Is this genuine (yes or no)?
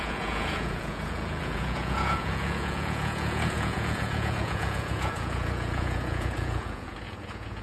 no